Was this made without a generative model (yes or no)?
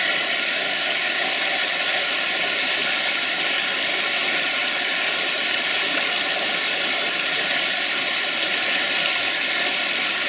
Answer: yes